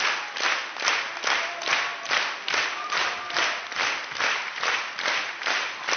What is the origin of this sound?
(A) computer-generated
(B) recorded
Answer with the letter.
B